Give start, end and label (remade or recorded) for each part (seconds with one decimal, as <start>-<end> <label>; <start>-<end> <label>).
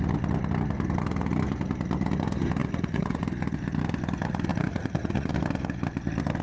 0.0-2.6 recorded; 2.6-3.2 remade; 3.2-4.5 recorded; 4.5-5.3 remade; 5.3-6.4 recorded